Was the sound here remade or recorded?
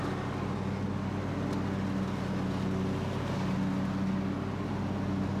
recorded